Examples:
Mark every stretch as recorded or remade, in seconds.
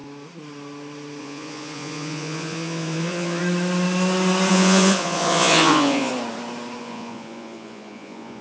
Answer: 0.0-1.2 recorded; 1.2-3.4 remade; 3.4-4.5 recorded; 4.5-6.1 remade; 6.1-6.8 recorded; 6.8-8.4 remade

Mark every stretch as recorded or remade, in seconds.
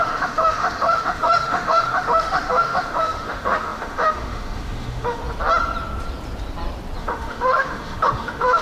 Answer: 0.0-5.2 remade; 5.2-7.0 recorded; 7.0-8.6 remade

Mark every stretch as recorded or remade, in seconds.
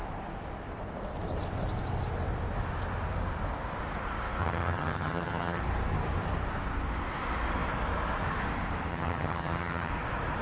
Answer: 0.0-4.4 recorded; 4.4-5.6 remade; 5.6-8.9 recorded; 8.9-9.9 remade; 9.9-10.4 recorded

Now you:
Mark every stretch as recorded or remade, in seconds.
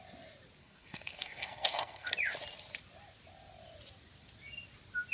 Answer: 0.0-0.6 recorded; 0.6-2.1 remade; 2.1-5.1 recorded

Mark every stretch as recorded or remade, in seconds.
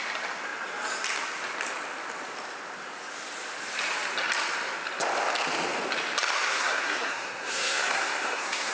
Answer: 0.0-6.5 recorded; 6.5-8.7 remade